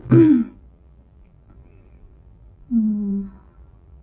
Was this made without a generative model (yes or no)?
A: no